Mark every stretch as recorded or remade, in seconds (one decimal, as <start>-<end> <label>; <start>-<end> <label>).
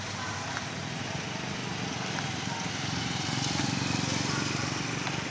0.0-5.3 recorded